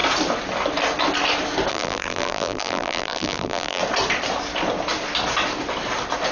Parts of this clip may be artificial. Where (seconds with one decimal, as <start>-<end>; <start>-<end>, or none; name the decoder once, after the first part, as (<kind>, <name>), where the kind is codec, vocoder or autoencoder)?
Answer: 1.7-3.8 (vocoder, BigVGAN v2)